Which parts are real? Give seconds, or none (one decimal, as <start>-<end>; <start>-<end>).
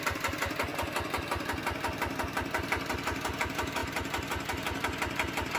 0.0-5.6